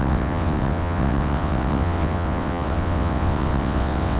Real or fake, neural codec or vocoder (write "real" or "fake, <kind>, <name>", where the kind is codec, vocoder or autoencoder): fake, vocoder, WaveNeXt